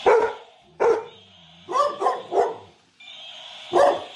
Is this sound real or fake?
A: real